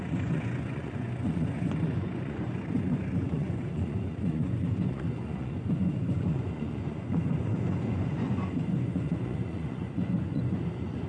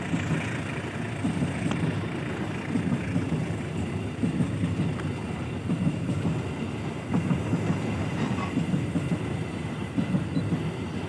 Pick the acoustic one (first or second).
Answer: second